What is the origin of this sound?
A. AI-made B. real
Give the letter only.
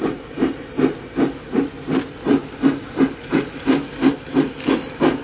B